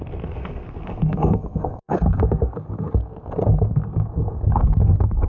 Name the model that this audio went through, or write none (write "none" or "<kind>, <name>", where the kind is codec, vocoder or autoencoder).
codec, SNAC